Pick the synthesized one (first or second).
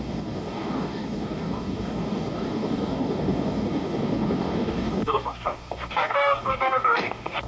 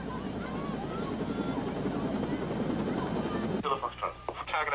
first